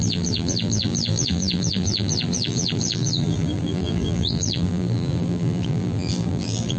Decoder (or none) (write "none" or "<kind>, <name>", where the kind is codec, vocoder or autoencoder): vocoder, BigVGAN v2